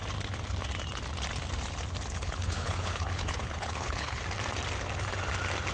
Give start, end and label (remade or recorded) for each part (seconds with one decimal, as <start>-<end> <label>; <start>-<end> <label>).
0.0-2.2 recorded; 2.2-4.2 remade; 4.2-5.7 recorded